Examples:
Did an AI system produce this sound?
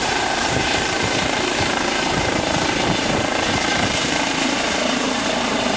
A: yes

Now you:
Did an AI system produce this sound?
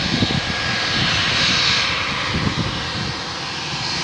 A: no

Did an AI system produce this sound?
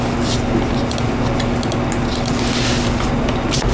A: no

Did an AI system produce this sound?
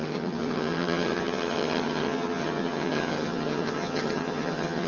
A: yes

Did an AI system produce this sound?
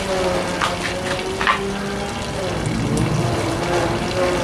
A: no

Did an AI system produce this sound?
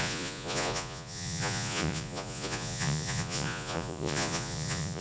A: yes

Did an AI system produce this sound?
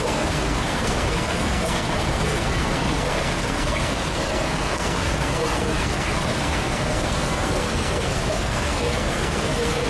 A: yes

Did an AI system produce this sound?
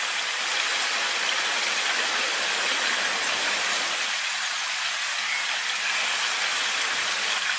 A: no